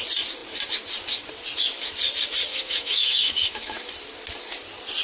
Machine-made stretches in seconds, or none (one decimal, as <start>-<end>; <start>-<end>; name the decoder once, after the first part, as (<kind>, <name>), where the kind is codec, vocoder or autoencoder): 2.5-3.9 (autoencoder, DAC-VAE)